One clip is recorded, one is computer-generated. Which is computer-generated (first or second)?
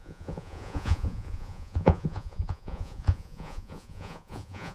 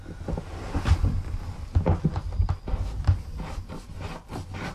first